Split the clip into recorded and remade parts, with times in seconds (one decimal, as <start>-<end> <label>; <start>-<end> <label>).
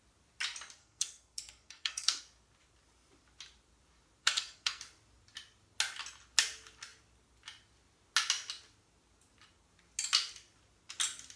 0.0-0.8 recorded; 0.8-2.2 remade; 2.2-4.2 recorded; 4.2-4.8 remade; 4.8-11.4 recorded